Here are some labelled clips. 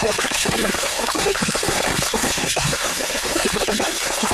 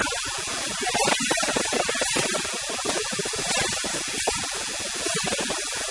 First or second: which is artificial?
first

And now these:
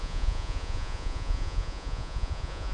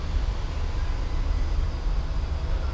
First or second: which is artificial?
first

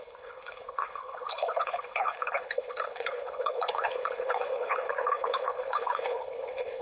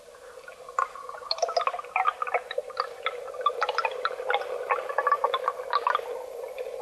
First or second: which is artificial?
first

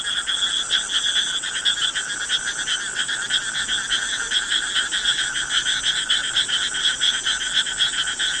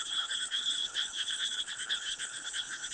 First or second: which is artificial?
second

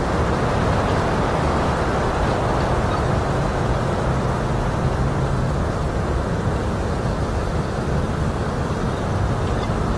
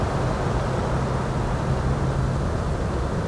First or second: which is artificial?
first